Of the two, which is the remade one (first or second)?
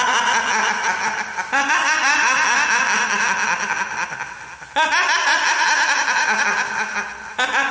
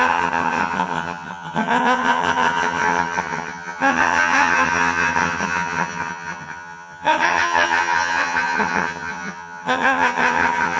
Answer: second